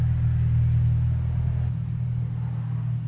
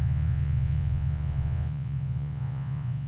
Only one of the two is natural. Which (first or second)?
first